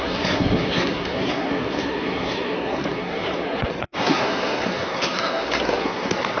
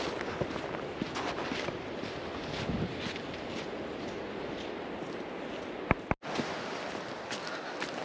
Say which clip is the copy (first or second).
first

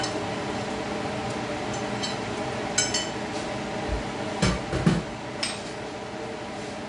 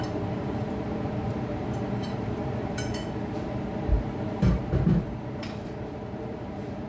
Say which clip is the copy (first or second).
second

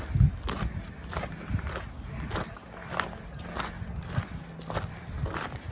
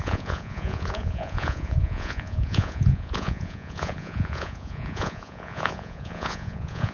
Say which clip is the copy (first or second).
second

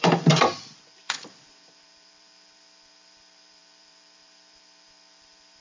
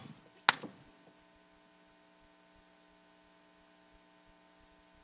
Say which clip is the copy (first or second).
first